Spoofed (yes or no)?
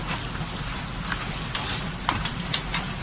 no